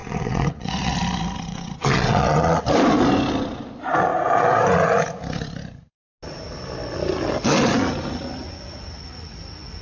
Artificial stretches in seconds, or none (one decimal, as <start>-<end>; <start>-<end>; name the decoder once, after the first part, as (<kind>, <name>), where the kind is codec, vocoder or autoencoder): 0.0-0.9 (vocoder, WaveNeXt); 1.5-2.6

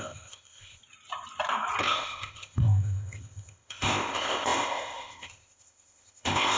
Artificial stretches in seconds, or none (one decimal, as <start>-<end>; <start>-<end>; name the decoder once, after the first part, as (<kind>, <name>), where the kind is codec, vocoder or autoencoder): 0.0-0.8 (codec, ZipCodec); 1.8-6.6

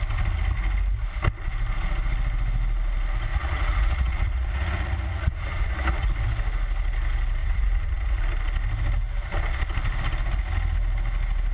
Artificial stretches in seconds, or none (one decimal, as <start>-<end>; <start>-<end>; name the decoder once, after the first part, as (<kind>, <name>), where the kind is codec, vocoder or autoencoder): 3.3-6.1 (vocoder, Vocos); 7.4-8.2

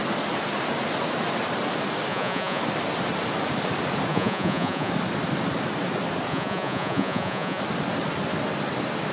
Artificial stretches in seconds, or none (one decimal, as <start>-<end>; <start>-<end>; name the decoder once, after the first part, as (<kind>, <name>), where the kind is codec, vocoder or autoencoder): 2.1-2.6 (vocoder, Vocos); 4.1-4.9; 6.3-7.6

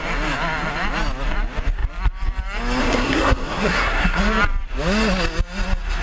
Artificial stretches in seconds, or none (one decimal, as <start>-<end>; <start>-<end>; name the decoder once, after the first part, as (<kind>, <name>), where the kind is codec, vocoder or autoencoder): 2.8-4.2 (codec, SNAC)

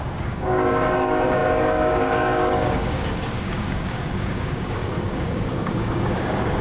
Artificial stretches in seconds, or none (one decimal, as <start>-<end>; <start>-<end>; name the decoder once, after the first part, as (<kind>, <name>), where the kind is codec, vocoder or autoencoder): 0.0-6.6 (codec, DAC)